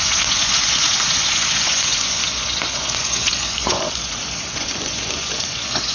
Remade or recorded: remade